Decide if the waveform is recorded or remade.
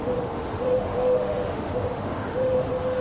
remade